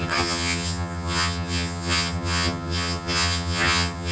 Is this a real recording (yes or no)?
no